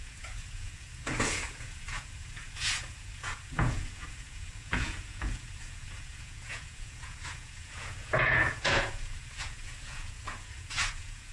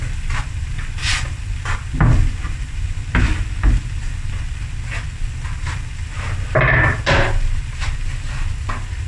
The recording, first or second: second